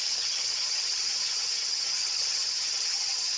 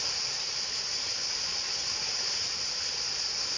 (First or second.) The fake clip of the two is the first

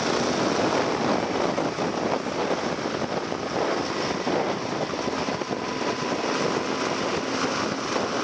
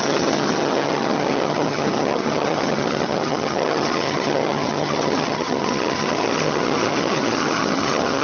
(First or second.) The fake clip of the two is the second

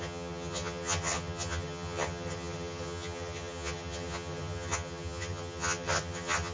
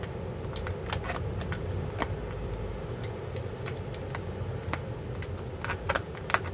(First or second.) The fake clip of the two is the first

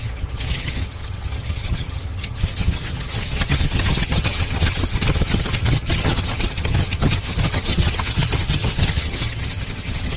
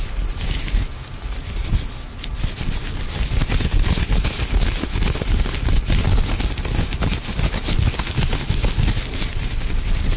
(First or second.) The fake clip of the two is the first